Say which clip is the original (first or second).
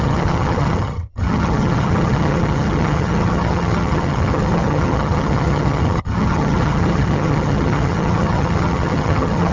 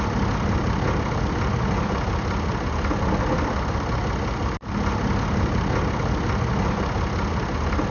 second